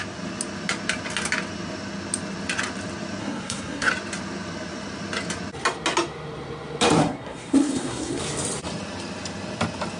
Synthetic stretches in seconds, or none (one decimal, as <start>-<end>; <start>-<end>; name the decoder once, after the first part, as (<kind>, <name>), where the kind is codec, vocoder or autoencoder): 3.2-3.9 (codec, SNAC); 7.0-8.2

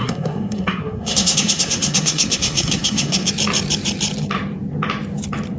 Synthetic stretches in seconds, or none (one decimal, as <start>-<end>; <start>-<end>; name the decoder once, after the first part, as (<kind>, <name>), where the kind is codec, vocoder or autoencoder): 0.0-3.3 (codec, SNAC)